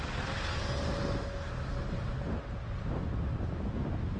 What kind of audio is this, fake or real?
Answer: real